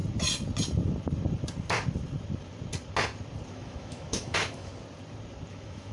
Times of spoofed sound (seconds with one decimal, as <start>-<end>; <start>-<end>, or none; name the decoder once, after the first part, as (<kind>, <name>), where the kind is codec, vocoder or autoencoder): 3.5-4.7 (autoencoder, DAC-VAE); 5.5-5.9